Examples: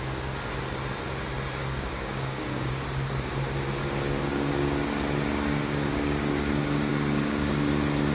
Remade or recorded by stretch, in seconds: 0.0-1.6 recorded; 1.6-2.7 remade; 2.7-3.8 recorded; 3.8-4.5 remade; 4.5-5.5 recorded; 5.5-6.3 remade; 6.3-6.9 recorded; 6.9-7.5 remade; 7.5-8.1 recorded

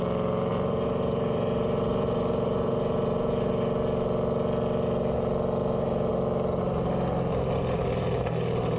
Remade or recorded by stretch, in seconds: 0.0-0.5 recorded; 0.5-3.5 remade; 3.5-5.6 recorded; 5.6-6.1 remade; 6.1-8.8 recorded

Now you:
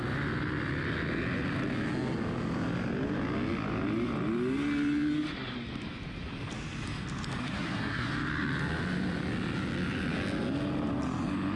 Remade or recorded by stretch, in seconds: 0.0-7.4 recorded; 7.4-8.1 remade; 8.1-11.6 recorded